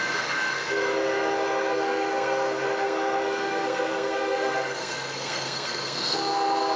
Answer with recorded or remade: remade